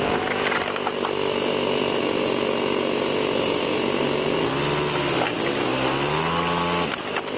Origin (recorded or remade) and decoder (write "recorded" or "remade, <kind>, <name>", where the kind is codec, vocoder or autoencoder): recorded